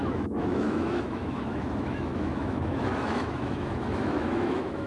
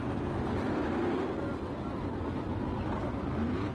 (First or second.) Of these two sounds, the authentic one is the second